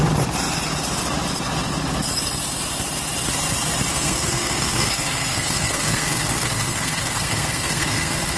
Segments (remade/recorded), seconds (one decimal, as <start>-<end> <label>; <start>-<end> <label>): 0.0-3.9 recorded; 3.9-8.4 remade